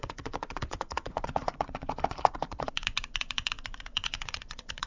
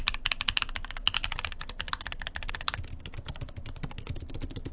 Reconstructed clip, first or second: first